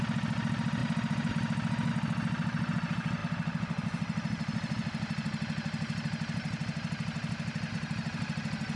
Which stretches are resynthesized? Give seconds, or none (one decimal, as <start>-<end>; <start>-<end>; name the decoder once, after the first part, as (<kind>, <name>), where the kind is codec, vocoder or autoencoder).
none